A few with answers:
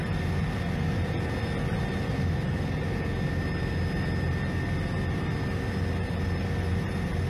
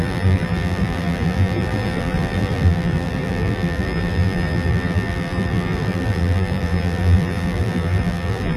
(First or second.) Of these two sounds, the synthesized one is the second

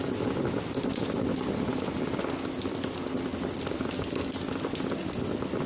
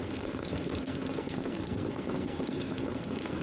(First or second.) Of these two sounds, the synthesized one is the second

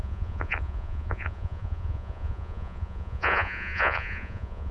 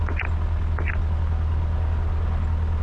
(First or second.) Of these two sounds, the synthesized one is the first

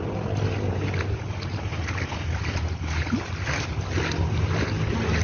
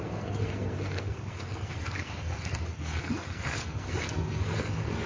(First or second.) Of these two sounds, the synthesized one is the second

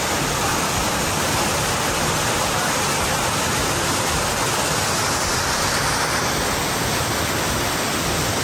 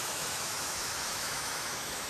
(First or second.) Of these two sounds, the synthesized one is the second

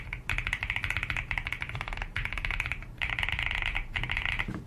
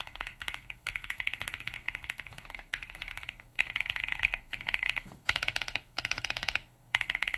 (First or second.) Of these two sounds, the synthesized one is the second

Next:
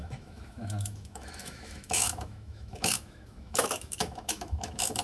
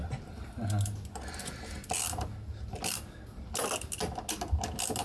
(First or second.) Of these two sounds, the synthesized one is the first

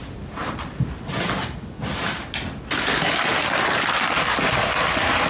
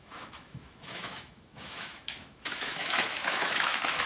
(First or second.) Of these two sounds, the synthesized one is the second